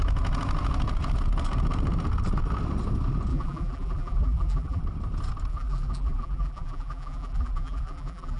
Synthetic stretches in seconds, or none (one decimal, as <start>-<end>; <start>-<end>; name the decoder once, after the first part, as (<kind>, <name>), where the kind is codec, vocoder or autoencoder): 3.3-4.8 (vocoder, BigVGAN v2); 5.5-8.4